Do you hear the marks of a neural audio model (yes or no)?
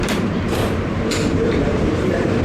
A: yes